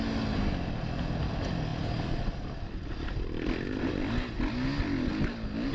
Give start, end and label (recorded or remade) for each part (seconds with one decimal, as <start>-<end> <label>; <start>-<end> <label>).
0.0-5.7 recorded